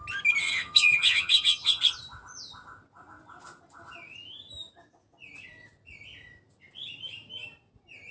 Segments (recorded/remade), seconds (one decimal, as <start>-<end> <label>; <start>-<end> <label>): 0.0-0.4 recorded; 0.4-1.8 remade; 1.8-8.1 recorded